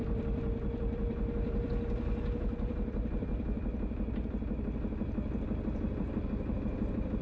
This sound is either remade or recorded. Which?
remade